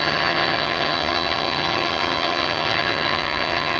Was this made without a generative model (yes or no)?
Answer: no